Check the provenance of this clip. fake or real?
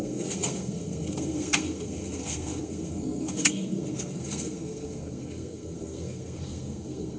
fake